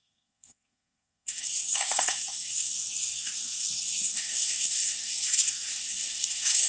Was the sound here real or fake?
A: fake